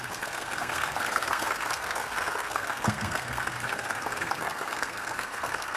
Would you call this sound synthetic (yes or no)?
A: yes